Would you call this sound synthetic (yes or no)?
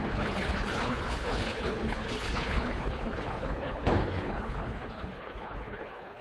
yes